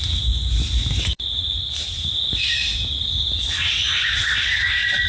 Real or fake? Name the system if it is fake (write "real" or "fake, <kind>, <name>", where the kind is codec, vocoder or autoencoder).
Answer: real